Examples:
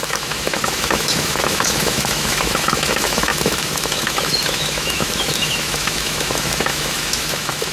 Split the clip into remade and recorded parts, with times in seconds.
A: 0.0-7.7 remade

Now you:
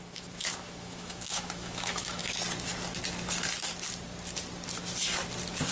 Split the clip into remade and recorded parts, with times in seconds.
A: 0.0-2.2 remade; 2.2-5.7 recorded

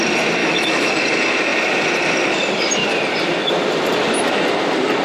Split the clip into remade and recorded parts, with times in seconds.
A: 0.0-0.4 recorded; 0.4-0.9 remade; 0.9-5.0 recorded

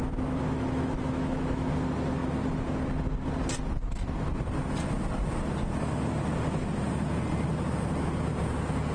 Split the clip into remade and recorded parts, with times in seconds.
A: 0.0-1.7 remade; 1.7-8.9 recorded

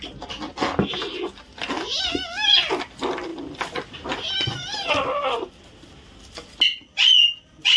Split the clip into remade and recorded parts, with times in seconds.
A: 0.0-7.8 recorded